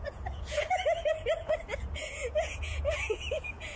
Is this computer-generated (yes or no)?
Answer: yes